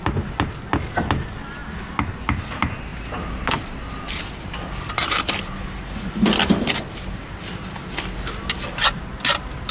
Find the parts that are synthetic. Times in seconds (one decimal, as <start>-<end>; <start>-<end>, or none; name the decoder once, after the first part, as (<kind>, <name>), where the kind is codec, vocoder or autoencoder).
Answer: none